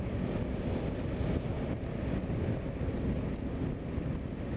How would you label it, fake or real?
real